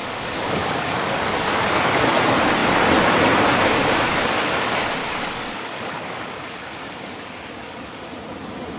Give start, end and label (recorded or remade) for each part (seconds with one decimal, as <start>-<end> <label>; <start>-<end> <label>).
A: 0.0-2.0 remade; 2.0-3.8 recorded; 3.8-4.5 remade; 4.5-5.0 recorded; 5.0-8.0 remade; 8.0-8.8 recorded